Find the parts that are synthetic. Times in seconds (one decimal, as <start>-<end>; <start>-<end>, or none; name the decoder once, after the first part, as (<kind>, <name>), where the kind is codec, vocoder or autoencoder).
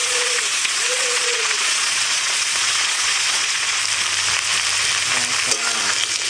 0.0-3.8 (vocoder, Vocos)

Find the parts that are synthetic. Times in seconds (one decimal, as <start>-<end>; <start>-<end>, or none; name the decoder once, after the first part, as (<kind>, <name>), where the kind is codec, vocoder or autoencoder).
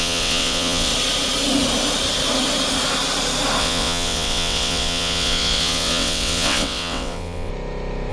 0.0-0.9 (vocoder, WaveNeXt); 3.6-7.5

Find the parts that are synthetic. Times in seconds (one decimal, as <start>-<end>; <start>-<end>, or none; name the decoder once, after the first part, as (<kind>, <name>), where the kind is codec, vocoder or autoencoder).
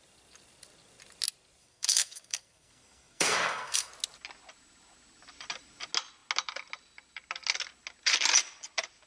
1.6-3.9 (codec, SNAC)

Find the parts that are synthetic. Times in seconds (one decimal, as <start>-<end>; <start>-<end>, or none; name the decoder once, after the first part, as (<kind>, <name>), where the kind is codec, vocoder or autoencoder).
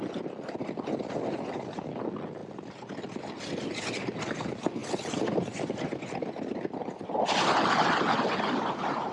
none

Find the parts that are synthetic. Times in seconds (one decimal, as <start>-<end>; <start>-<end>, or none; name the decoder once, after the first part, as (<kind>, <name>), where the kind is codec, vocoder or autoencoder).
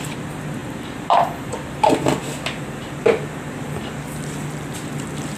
0.6-1.3 (vocoder, BigVGAN v2); 2.2-5.4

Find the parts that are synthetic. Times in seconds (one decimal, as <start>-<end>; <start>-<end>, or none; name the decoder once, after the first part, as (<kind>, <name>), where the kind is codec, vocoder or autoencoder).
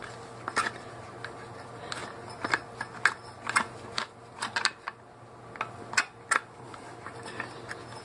none